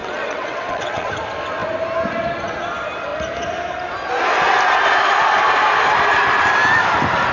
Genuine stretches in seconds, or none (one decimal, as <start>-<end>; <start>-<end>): 1.1-7.3